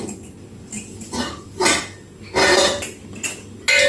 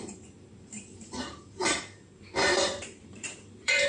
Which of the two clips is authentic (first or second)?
first